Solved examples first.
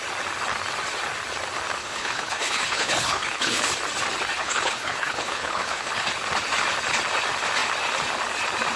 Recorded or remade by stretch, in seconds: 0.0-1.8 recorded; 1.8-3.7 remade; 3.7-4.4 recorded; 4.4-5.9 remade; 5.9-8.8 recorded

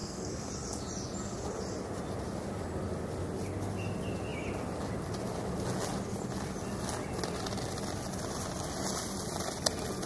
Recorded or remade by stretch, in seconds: 0.0-0.5 remade; 0.5-10.1 recorded

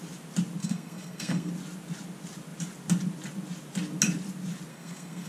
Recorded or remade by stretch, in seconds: 0.0-0.6 recorded; 0.6-1.5 remade; 1.5-4.7 recorded; 4.7-5.3 remade

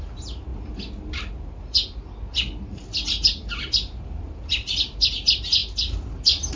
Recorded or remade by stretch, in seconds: 0.0-6.6 recorded